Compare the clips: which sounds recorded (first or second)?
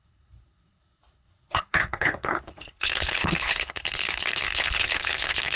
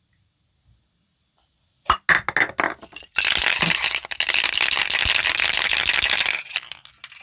second